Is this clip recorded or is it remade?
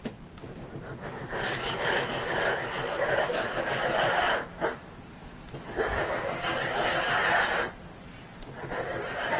recorded